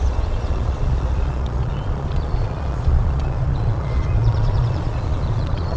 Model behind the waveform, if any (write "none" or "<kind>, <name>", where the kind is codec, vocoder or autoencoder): vocoder, Vocos